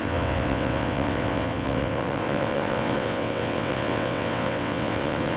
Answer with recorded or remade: remade